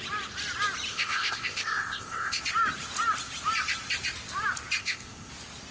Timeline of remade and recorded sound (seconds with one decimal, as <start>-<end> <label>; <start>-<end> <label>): 0.0-0.9 recorded; 0.9-2.4 remade; 2.4-4.8 recorded; 4.8-5.3 remade; 5.3-5.7 recorded